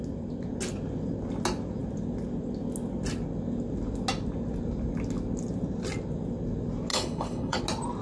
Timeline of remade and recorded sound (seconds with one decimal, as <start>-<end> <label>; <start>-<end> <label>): 0.0-6.9 recorded; 6.9-7.6 remade; 7.6-8.0 recorded